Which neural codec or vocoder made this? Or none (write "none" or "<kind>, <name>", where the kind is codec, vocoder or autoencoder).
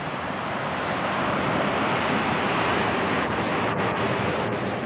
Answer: vocoder, BigVGAN v2